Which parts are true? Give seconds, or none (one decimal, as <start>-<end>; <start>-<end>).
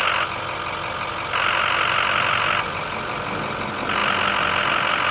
0.0-5.1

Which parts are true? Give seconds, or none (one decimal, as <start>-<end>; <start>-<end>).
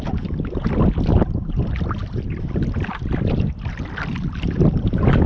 0.0-5.3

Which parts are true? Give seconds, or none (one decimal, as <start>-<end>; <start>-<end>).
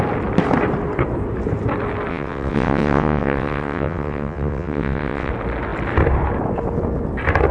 0.0-2.1; 5.3-7.5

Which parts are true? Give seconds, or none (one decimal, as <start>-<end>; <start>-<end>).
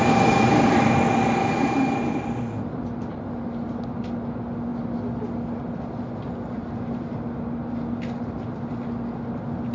0.0-9.7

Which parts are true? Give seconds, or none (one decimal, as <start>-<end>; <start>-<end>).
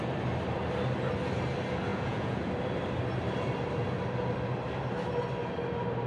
0.0-1.9; 2.4-6.1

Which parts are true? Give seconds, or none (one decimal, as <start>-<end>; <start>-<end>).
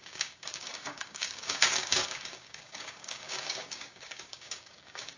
none